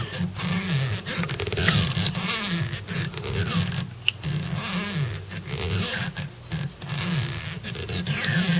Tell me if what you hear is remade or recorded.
recorded